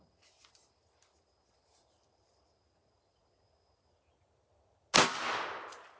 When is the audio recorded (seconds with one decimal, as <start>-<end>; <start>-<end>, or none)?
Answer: 0.0-6.0